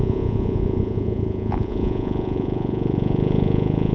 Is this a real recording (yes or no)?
no